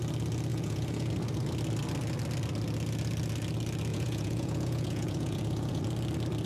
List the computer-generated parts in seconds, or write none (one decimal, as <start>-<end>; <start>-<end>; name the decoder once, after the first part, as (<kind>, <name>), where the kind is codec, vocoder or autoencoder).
0.5-1.1 (vocoder, Vocos); 3.9-5.8